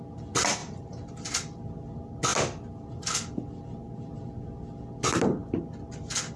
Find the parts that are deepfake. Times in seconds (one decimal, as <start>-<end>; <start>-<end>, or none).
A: 0.6-1.1